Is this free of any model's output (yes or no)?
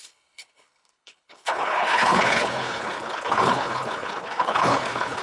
no